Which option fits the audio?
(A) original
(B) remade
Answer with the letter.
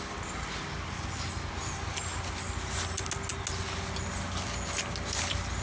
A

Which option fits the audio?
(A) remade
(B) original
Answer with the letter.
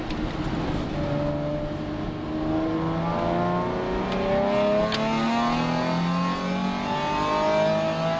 B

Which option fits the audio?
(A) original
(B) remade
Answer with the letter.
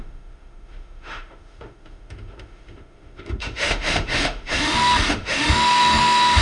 B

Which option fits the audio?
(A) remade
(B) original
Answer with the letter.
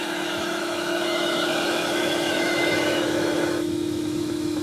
A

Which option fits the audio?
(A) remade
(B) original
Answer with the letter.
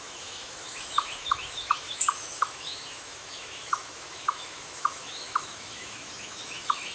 A